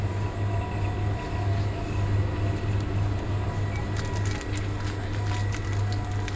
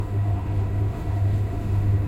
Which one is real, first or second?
first